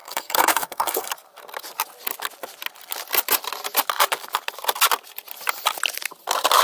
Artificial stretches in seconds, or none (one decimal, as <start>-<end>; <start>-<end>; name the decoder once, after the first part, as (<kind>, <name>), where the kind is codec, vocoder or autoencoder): 0.0-1.1 (codec, SNAC)